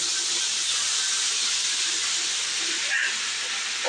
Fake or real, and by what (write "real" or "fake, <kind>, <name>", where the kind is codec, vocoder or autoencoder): real